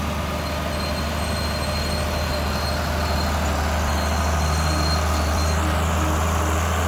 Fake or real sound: real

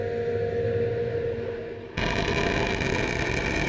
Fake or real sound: real